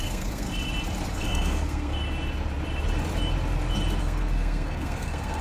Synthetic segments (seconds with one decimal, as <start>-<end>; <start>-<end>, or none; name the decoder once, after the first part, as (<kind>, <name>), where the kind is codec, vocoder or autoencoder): 0.0-0.5 (codec, SNAC); 1.1-1.9; 4.0-5.4